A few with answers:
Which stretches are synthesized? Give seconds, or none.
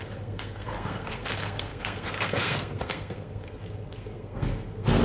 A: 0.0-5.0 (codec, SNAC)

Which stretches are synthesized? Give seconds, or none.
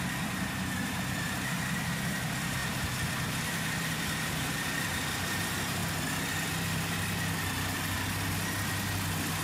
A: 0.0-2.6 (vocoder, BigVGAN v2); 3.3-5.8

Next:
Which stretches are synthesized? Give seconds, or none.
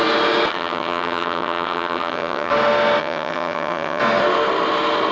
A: 0.5-2.5 (vocoder, HiFi-GAN); 3.0-4.0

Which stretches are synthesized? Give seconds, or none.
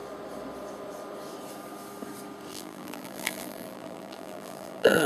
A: 2.5-5.1 (vocoder, BigVGAN v2)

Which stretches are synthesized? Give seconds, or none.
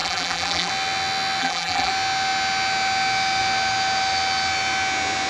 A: 0.0-0.7 (vocoder, BigVGAN v2); 1.4-1.9